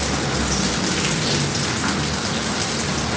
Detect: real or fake real